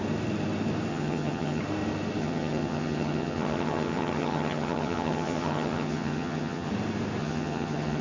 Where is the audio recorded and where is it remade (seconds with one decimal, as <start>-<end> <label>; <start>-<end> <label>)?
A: 0.0-0.9 recorded; 0.9-1.6 remade; 1.6-2.2 recorded; 2.2-6.7 remade; 6.7-7.2 recorded; 7.2-8.0 remade